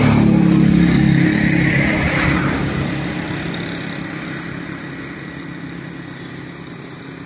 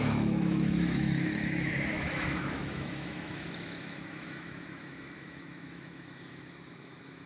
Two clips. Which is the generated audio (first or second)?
second